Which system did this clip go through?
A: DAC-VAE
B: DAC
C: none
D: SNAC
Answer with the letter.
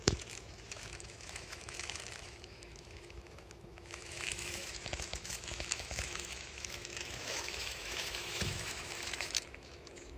A